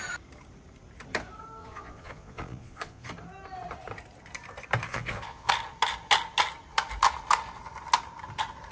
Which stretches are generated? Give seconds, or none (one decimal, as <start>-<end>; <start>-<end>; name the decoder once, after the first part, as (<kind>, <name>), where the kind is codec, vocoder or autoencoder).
1.6-3.1 (vocoder, Vocos); 4.9-5.5